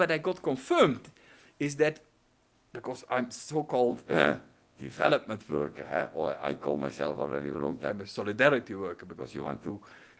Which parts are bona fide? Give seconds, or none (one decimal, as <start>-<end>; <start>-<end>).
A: 0.0-3.9; 5.1-5.5; 7.9-9.2; 9.7-10.2